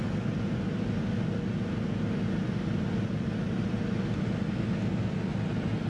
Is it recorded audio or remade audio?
recorded